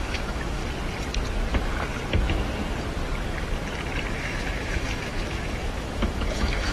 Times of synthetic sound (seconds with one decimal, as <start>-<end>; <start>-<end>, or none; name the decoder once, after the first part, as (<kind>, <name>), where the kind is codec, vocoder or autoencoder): 0.0-0.6 (autoencoder, DAC-VAE); 4.1-6.7